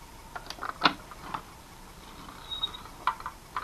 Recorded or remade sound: recorded